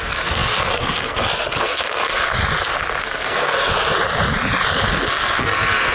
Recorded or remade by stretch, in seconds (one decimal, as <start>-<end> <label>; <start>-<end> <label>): 0.0-2.3 remade; 2.3-3.0 recorded; 3.0-3.7 remade; 3.7-5.1 recorded; 5.1-5.9 remade